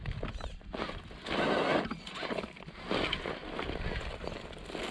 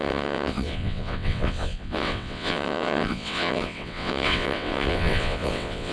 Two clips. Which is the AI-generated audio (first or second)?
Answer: second